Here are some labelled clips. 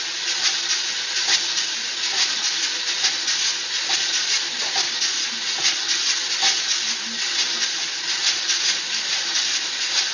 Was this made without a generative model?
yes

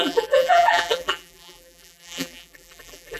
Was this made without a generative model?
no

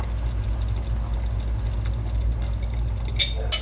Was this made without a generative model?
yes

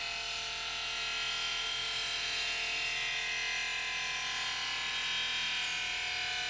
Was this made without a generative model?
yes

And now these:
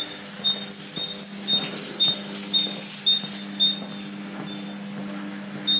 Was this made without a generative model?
yes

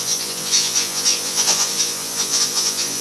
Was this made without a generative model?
no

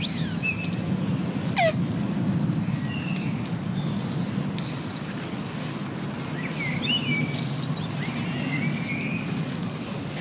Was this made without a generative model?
yes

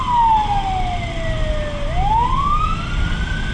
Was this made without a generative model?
yes